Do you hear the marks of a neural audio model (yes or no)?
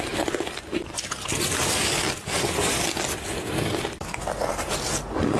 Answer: no